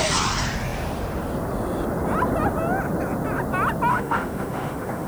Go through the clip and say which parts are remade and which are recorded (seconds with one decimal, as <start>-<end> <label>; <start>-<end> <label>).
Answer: 0.0-3.9 recorded; 3.9-5.1 remade